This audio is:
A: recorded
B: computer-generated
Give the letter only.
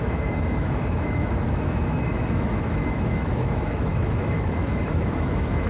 B